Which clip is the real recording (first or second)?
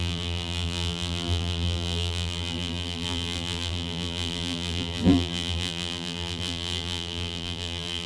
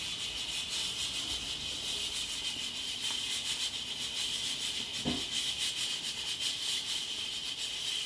second